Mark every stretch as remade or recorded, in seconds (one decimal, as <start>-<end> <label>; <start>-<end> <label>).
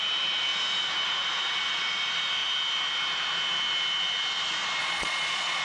0.0-4.8 recorded; 4.8-5.6 remade